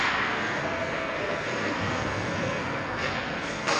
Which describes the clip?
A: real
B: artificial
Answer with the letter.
B